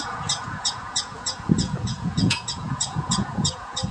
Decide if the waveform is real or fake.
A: fake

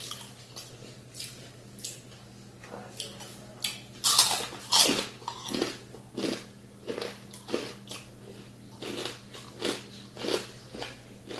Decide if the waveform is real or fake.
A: real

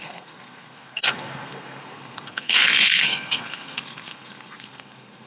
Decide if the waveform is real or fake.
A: fake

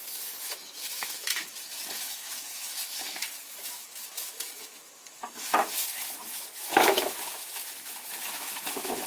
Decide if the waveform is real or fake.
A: fake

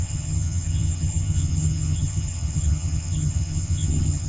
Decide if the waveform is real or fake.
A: fake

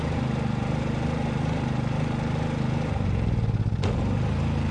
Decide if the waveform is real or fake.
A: real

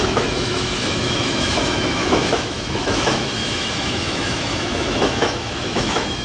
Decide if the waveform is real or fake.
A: fake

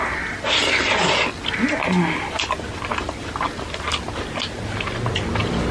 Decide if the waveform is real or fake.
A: real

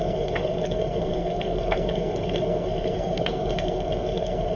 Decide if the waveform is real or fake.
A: fake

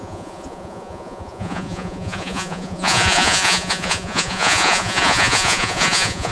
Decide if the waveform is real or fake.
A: fake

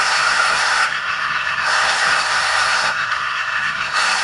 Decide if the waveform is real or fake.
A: fake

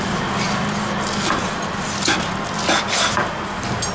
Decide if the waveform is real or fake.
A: real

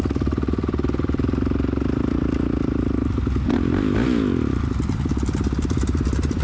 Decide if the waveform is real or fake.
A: real